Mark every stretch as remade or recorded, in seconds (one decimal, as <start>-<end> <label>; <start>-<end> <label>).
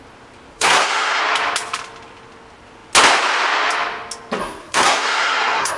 0.0-0.5 recorded; 0.5-1.2 remade; 1.2-4.4 recorded; 4.4-5.8 remade